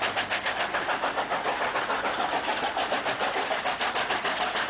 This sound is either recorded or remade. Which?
recorded